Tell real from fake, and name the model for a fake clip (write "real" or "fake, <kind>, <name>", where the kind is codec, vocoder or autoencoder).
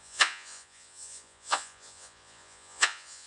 fake, vocoder, Vocos